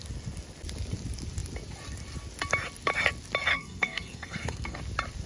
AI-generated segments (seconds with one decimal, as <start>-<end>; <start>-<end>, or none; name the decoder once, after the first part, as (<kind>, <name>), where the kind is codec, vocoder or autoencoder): 3.5-4.8 (codec, SNAC)